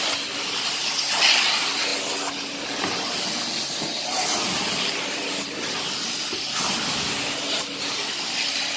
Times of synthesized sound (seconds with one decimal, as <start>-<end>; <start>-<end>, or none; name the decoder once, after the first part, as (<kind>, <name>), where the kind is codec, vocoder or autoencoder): none